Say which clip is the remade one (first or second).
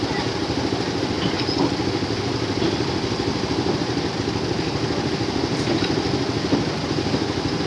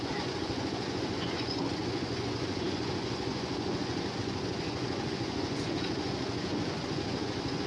second